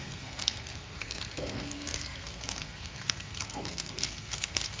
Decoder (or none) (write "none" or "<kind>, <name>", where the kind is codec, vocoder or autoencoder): codec, SNAC